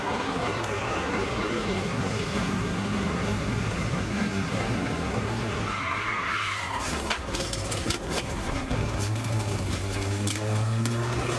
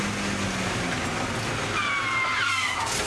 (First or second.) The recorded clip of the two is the second